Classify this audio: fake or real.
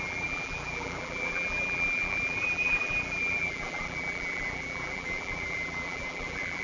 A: fake